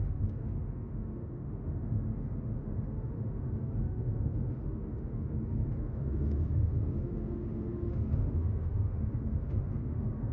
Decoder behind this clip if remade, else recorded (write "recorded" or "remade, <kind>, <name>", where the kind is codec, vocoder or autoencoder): remade, autoencoder, DAC-VAE